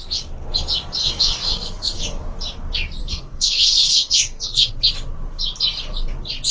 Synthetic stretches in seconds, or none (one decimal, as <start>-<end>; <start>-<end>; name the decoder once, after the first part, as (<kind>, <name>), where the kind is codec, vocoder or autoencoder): 1.0-2.0 (codec, SNAC); 3.0-4.7